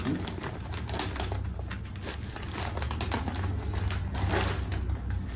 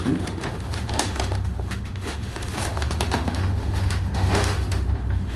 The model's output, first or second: second